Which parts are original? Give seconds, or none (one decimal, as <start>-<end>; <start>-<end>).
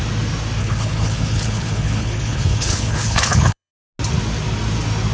0.0-0.6; 3.7-5.1